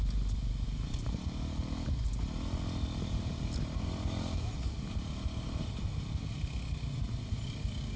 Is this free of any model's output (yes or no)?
yes